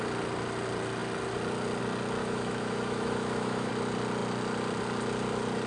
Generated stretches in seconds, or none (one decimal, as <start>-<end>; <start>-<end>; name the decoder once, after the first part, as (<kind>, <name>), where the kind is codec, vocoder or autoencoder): 2.2-3.7 (autoencoder, DAC-VAE)